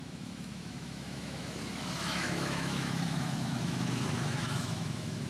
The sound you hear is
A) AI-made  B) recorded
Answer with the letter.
A